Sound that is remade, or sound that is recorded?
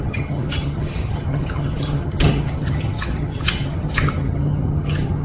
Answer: remade